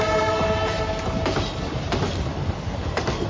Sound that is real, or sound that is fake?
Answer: real